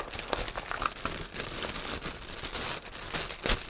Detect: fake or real real